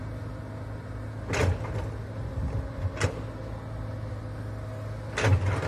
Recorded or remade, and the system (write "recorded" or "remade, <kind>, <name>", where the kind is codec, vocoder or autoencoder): recorded